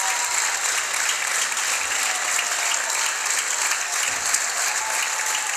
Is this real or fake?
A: real